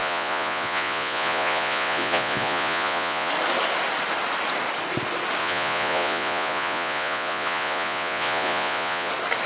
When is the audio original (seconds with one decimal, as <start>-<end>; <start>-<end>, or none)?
3.3-5.4; 9.1-9.5